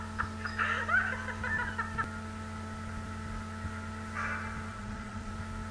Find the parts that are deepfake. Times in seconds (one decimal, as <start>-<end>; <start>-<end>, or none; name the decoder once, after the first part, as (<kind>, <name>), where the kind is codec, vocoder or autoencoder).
4.7-5.3 (vocoder, Vocos)

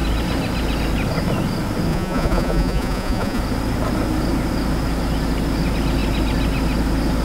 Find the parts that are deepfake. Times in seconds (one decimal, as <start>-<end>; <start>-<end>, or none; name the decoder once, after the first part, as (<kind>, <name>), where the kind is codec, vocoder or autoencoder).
1.9-3.4 (vocoder, Vocos)

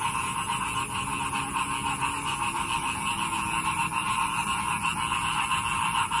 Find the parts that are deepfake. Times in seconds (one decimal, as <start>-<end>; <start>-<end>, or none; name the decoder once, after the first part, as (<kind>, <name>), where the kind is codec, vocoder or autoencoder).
none

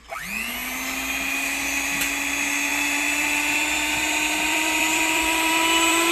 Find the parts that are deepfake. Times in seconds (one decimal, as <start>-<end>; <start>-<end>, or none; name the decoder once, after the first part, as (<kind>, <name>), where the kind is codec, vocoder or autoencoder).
0.6-2.3 (vocoder, BigVGAN v2); 2.7-6.1

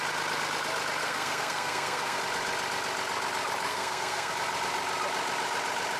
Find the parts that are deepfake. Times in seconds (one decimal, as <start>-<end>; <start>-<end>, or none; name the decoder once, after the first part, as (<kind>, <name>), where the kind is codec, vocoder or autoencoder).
1.0-2.2 (codec, SNAC); 3.7-4.3

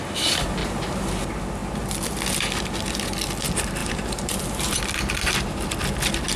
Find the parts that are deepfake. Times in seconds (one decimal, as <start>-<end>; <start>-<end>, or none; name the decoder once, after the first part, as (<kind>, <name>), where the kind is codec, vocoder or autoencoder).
0.6-1.2 (vocoder, BigVGAN v2); 1.6-2.2; 3.8-4.8

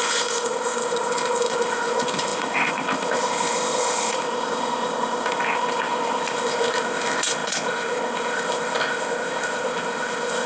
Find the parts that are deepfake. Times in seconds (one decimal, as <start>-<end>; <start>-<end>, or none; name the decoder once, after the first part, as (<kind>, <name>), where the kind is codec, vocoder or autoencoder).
0.0-10.5 (codec, ZipCodec)

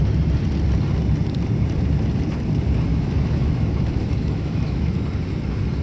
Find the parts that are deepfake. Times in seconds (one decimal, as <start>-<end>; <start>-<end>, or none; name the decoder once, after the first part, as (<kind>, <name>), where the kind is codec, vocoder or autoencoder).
2.9-4.9 (autoencoder, DAC-VAE)